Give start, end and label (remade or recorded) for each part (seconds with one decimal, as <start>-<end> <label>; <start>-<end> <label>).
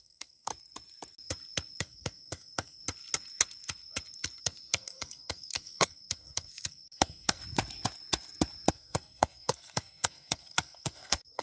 0.0-0.5 remade; 0.5-1.8 recorded; 1.8-2.8 remade; 2.8-4.4 recorded; 4.4-7.4 remade; 7.4-8.7 recorded; 8.7-11.4 remade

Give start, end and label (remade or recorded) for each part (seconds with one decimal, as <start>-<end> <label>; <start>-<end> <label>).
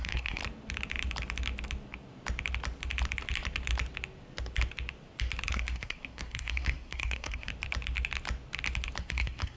0.0-0.4 remade; 0.4-5.5 recorded; 5.5-7.5 remade; 7.5-9.0 recorded; 9.0-9.6 remade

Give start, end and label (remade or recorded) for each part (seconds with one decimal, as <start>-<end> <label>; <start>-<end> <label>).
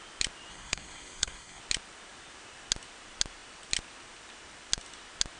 0.0-0.5 recorded; 0.5-1.6 remade; 1.6-5.4 recorded